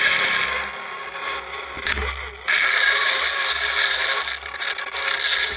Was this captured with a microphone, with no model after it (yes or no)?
yes